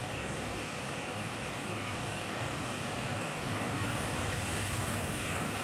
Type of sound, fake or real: fake